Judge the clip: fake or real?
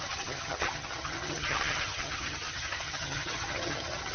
fake